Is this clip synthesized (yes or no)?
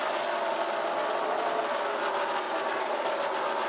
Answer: no